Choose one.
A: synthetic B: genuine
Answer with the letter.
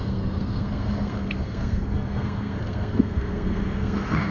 A